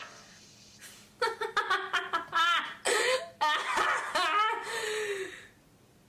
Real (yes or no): yes